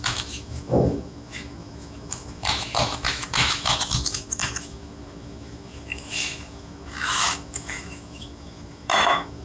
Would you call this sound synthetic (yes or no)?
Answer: yes